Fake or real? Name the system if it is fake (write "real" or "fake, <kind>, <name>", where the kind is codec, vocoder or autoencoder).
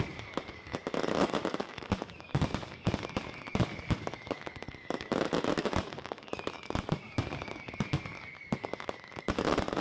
fake, codec, DAC